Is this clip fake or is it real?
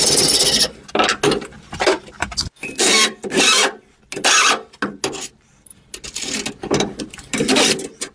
real